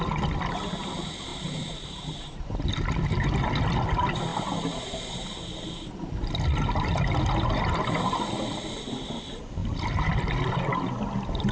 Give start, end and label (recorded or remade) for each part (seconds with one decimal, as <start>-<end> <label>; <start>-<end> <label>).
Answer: 0.0-1.3 recorded; 1.3-2.5 remade; 2.5-11.5 recorded